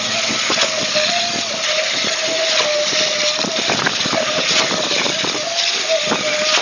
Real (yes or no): yes